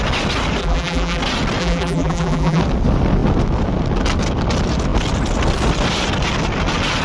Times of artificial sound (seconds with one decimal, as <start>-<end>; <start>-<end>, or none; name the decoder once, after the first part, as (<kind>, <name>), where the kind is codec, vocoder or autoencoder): 0.6-1.2 (vocoder, BigVGAN v2); 1.6-2.6